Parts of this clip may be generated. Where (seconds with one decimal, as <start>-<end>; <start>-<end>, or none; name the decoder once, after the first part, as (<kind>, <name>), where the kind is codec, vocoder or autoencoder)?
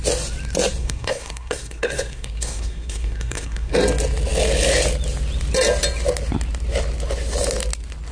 0.8-3.7 (codec, SNAC)